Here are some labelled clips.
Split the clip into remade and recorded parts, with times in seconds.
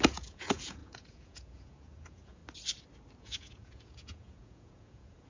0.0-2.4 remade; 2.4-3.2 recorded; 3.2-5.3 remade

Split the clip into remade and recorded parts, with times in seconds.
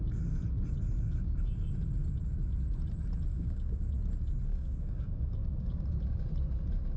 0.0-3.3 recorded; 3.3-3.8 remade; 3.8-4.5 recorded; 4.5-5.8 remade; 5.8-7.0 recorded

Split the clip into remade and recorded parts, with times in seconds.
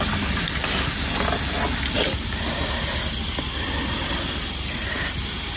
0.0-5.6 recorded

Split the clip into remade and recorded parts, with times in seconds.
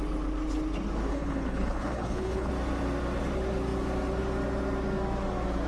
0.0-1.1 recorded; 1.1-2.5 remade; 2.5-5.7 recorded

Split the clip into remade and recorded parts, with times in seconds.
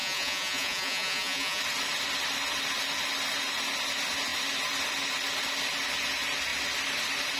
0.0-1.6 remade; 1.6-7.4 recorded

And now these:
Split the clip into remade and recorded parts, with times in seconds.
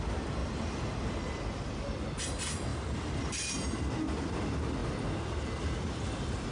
0.0-0.4 recorded; 0.4-0.9 remade; 0.9-2.7 recorded; 2.7-3.3 remade; 3.3-6.5 recorded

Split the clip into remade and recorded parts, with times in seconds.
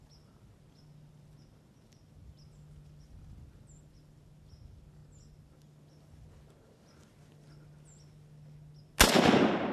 0.0-9.7 recorded